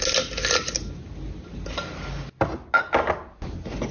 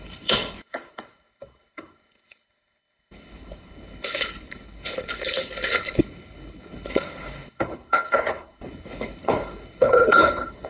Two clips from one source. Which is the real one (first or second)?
first